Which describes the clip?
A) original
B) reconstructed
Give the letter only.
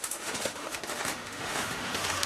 B